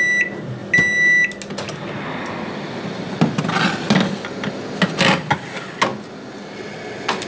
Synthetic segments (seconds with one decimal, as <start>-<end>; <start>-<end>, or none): none